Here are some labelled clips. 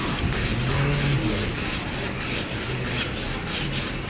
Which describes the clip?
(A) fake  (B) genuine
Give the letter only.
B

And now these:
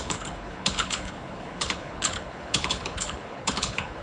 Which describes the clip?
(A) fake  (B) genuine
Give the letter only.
A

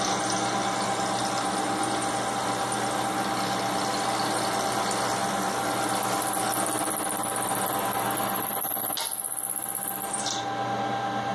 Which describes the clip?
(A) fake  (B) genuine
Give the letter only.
B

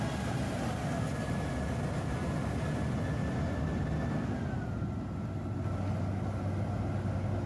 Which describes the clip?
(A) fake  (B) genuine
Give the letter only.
B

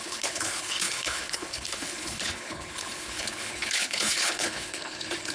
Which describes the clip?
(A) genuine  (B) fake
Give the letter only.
B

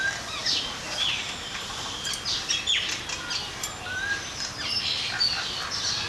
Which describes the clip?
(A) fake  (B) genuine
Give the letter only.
B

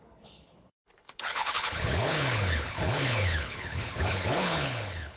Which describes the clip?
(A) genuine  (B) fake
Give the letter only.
B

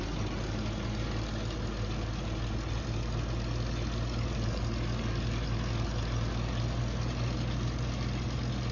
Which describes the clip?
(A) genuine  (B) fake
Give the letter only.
A